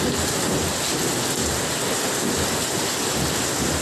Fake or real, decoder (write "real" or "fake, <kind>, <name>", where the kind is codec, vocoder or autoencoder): real